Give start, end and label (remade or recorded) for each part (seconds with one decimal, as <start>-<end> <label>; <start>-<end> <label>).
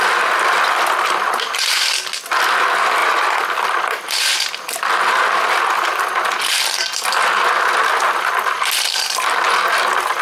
0.0-10.2 recorded